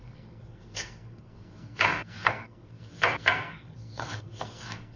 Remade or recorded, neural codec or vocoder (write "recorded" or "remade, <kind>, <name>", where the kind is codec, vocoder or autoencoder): remade, codec, SNAC